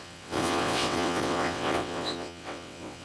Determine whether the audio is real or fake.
fake